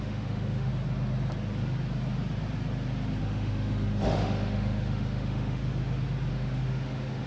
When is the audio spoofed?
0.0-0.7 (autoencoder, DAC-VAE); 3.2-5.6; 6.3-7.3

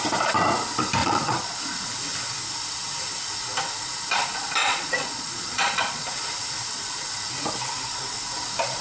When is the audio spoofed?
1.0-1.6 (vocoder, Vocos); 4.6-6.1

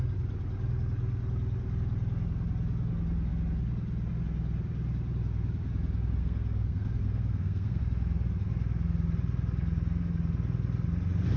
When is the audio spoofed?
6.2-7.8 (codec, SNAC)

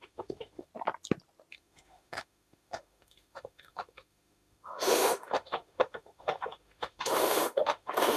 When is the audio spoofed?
0.0-0.7 (autoencoder, DAC-VAE); 1.5-8.2

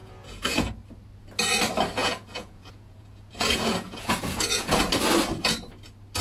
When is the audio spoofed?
0.0-0.7 (vocoder, Vocos); 2.0-4.8